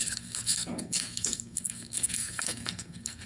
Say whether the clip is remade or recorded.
remade